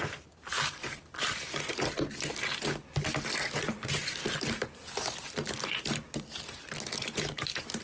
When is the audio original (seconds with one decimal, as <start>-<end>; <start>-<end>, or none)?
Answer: 0.0-7.8